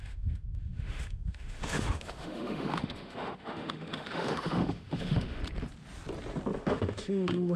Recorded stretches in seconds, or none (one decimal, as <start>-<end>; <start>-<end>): 5.4-6.6